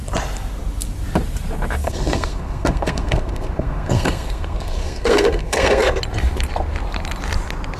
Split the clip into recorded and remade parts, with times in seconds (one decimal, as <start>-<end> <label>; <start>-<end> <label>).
0.0-1.8 recorded; 1.8-6.0 remade; 6.0-7.8 recorded